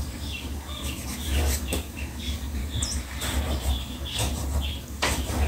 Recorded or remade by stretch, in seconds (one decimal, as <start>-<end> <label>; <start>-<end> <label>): 0.0-2.6 remade; 2.6-3.8 recorded; 3.8-4.3 remade; 4.3-4.8 recorded; 4.8-5.5 remade